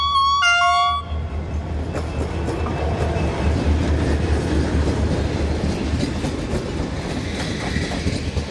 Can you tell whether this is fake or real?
real